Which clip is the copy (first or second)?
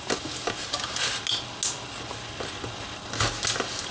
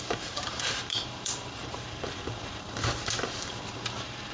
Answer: second